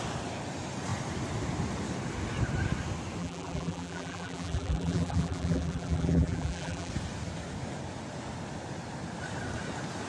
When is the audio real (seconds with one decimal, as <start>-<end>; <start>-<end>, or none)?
0.0-3.2; 6.9-10.1